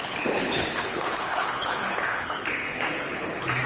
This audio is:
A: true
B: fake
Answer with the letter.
B